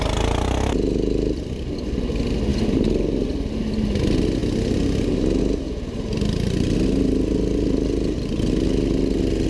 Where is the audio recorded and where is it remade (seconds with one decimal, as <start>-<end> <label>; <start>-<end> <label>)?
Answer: 0.0-2.5 recorded; 2.5-3.6 remade; 3.6-9.5 recorded